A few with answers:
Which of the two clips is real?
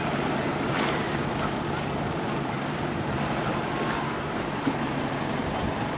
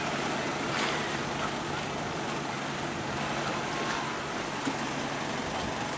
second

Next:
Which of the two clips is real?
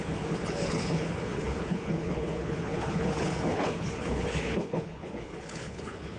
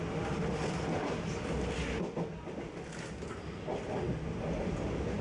second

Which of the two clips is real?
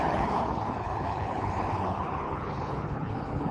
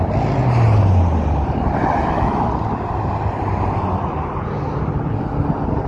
second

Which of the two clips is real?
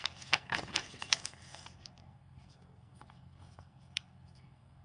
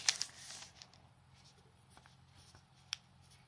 second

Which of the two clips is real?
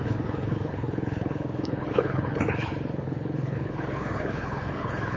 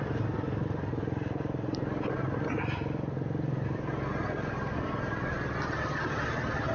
second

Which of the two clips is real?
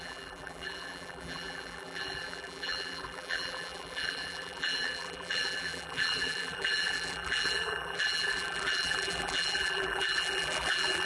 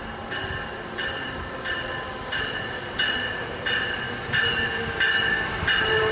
second